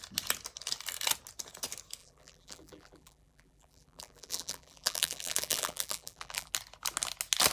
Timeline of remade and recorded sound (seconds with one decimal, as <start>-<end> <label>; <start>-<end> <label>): 0.0-2.0 recorded; 2.0-6.5 remade; 6.5-7.5 recorded